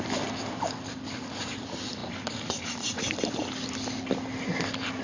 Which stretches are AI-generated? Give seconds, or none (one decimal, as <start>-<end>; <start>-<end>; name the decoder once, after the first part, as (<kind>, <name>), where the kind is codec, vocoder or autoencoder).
none

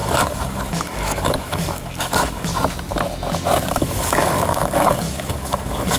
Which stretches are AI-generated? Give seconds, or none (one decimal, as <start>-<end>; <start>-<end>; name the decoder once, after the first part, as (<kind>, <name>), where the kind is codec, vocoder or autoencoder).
0.0-2.5 (codec, DAC); 3.7-6.0

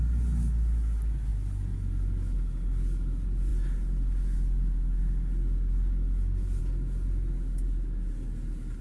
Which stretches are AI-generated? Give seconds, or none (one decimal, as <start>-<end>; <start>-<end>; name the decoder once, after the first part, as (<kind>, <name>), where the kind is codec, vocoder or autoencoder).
none

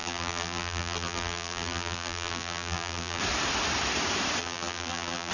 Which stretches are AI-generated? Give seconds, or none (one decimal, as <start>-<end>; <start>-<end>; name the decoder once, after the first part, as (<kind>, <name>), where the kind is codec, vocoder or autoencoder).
0.0-3.2 (vocoder, BigVGAN v2); 4.4-5.3

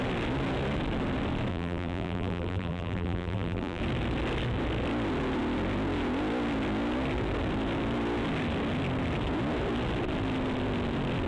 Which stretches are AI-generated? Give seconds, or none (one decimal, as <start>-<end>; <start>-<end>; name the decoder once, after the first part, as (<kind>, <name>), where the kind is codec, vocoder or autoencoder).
1.5-3.8 (vocoder, BigVGAN v2)

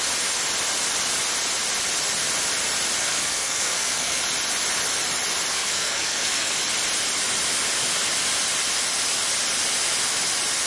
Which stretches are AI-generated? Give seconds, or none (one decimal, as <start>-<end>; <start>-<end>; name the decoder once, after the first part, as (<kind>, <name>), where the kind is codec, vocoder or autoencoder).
3.0-4.2 (codec, SNAC); 5.5-6.6

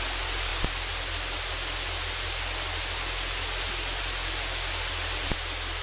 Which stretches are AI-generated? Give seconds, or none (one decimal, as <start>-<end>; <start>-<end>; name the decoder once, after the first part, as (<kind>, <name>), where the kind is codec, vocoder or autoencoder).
none